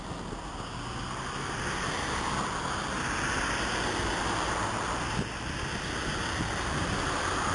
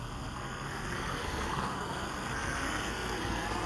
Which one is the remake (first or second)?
second